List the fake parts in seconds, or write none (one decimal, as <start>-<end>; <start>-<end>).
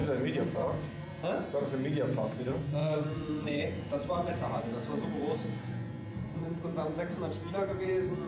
2.2-6.7; 7.5-8.3